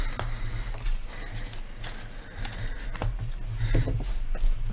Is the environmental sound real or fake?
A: real